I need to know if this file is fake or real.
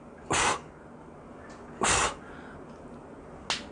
real